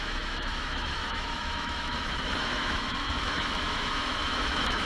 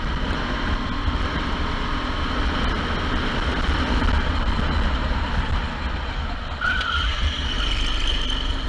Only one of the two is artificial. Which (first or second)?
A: first